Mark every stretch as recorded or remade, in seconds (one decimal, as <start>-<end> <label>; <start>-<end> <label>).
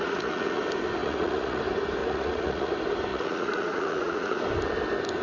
0.0-0.6 remade; 0.6-1.0 recorded; 1.0-1.6 remade; 1.6-2.0 recorded; 2.0-2.7 remade; 2.7-3.1 recorded; 3.1-4.4 remade; 4.4-5.2 recorded